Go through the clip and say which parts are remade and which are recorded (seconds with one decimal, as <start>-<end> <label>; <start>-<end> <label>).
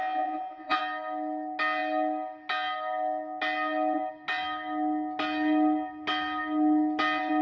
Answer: 0.0-0.8 remade; 0.8-7.4 recorded